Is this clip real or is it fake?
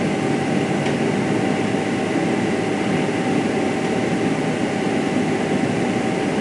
real